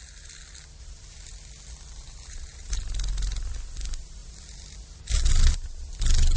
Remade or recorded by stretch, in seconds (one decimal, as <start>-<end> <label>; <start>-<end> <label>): 0.0-6.4 recorded